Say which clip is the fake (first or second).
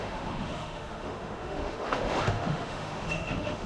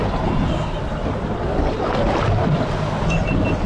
first